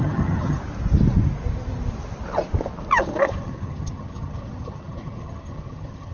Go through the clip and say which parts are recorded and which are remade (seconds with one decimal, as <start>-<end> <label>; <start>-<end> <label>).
0.0-0.6 remade; 0.6-3.3 recorded; 3.3-6.1 remade